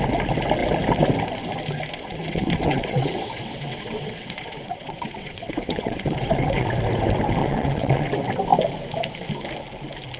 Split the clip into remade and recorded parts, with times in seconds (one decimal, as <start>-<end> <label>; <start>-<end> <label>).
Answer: 0.0-2.1 recorded; 2.1-6.7 remade; 6.7-7.4 recorded; 7.4-8.1 remade; 8.1-10.2 recorded